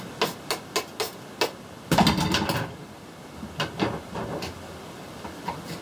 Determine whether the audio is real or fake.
real